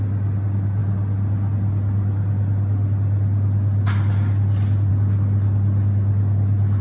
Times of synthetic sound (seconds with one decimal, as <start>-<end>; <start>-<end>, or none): none

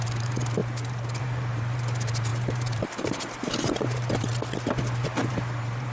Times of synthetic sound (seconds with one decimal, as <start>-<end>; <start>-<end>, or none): 0.0-4.3; 5.3-5.9